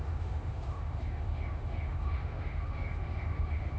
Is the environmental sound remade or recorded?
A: remade